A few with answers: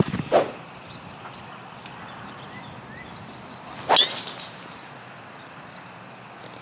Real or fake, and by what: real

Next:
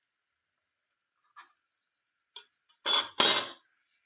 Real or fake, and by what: real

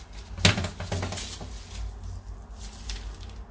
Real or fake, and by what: real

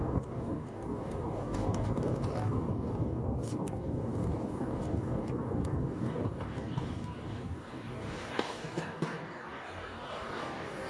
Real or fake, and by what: fake, codec, DAC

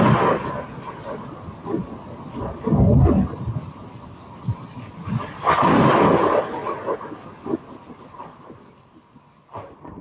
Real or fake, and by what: real